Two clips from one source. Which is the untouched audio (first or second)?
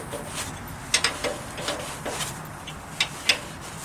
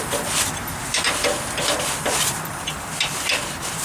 first